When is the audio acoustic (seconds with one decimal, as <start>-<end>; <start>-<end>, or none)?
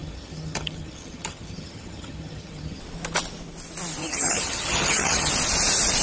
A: 2.8-4.0; 5.3-6.0